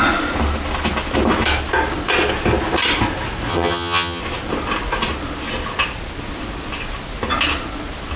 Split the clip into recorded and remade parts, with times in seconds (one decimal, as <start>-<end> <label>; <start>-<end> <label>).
0.0-3.5 recorded; 3.5-4.2 remade; 4.2-8.2 recorded